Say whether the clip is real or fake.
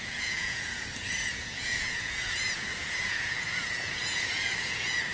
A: fake